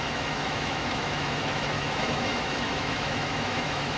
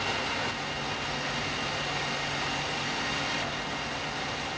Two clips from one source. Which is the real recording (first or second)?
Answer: second